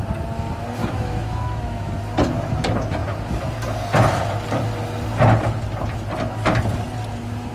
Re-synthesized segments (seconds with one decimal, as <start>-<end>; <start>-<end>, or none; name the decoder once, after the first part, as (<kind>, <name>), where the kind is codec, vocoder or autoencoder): 0.8-1.9 (autoencoder, DAC-VAE)